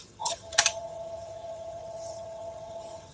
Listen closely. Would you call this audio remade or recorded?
remade